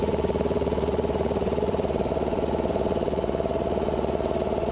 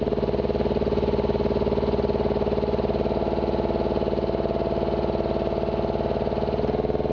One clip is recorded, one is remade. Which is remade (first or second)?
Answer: first